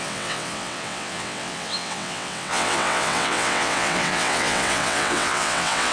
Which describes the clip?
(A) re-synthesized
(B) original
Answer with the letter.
A